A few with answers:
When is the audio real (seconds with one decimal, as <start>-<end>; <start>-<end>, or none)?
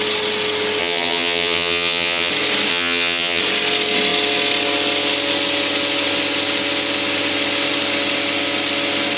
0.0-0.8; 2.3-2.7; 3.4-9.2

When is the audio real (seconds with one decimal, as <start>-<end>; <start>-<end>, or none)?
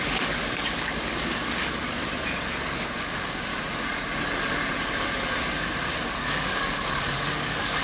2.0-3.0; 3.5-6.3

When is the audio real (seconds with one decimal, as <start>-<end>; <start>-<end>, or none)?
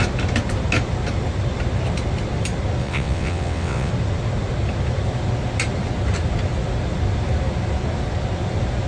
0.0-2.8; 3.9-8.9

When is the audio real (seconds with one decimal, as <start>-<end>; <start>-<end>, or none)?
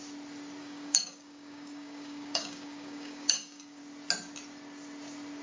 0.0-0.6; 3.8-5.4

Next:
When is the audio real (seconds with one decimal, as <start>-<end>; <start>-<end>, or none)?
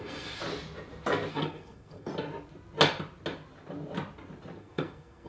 0.4-1.3; 2.1-4.6